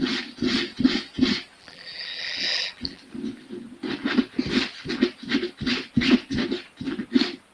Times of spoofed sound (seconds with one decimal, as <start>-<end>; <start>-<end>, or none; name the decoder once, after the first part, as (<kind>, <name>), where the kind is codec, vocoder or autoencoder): 1.6-3.0 (vocoder, BigVGAN v2)